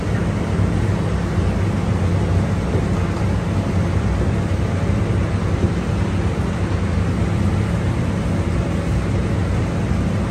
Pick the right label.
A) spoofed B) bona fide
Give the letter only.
B